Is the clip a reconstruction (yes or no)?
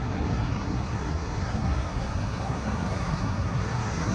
yes